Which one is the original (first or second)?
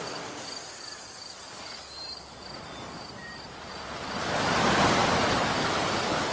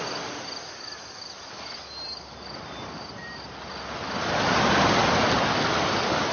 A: second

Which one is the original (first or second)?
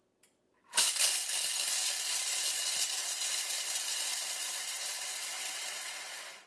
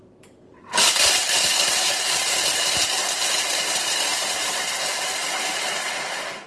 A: first